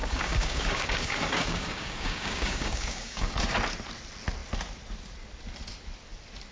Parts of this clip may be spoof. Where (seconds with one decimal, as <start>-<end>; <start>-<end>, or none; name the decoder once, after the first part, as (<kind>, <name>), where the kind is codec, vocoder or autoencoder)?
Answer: 0.0-3.4 (codec, DAC)